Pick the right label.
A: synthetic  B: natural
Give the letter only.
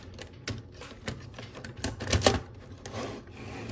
B